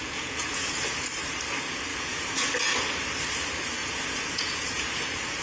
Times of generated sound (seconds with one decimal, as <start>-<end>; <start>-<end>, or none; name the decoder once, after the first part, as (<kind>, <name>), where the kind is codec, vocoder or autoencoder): 0.0-0.9 (vocoder, Vocos); 1.9-2.5; 3.8-5.4